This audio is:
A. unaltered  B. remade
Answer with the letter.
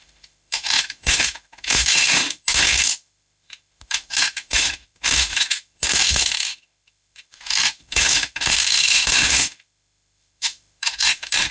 B